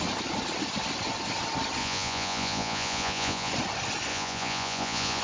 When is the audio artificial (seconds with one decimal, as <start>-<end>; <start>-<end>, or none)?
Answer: 1.8-3.5; 4.1-5.2